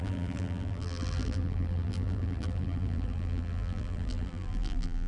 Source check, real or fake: fake